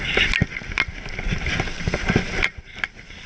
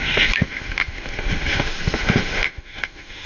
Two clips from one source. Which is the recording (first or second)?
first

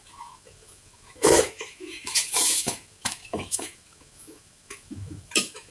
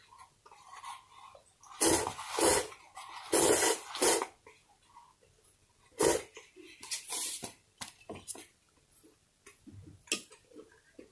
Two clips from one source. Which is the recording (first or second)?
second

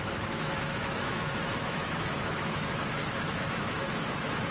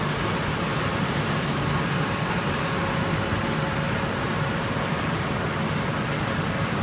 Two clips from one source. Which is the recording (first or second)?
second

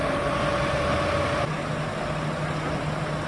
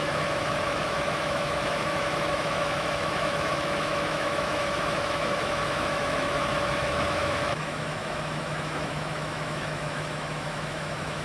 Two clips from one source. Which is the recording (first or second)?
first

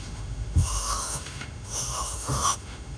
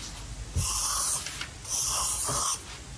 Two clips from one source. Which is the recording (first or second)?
second